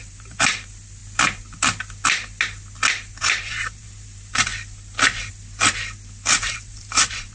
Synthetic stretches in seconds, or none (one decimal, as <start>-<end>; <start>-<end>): 0.0-1.0; 3.2-4.5; 6.5-7.3